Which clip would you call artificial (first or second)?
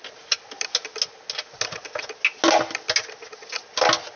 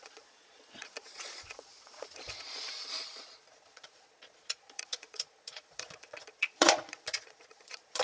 second